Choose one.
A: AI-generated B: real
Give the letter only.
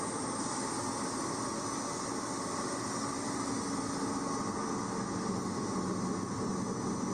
B